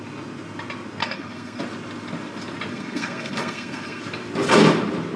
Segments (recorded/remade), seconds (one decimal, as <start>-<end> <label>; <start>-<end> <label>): 0.0-1.0 recorded; 1.0-1.6 remade; 1.6-2.7 recorded; 2.7-4.0 remade; 4.0-5.2 recorded